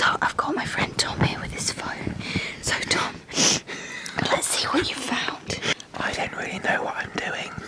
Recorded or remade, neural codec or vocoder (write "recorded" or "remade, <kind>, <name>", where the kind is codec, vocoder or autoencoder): remade, vocoder, BigVGAN v2